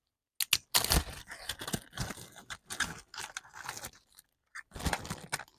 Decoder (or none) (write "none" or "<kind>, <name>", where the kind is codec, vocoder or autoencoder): none